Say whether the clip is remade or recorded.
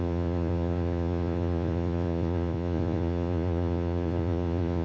remade